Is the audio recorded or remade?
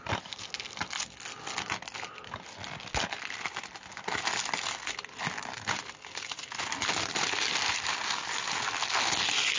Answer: recorded